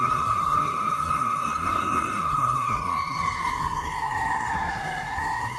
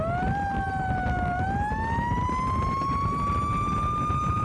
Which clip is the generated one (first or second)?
first